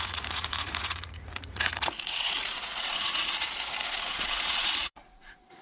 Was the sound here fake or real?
fake